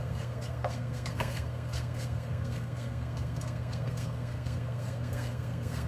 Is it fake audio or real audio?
fake